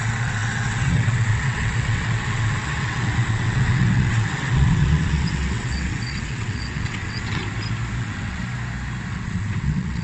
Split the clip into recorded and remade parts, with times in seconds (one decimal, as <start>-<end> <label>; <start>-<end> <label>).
0.0-7.4 remade; 7.4-8.0 recorded; 8.0-8.4 remade; 8.4-9.1 recorded; 9.1-10.0 remade